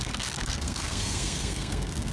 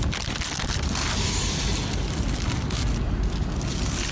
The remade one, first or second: first